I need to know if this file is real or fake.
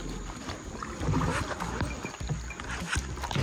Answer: real